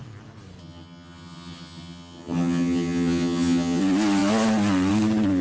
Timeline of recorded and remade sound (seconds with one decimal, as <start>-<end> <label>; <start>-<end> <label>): 0.0-0.6 recorded; 0.6-3.8 remade; 3.8-5.4 recorded